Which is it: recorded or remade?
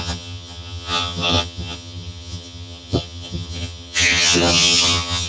remade